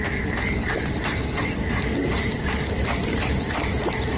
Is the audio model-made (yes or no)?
no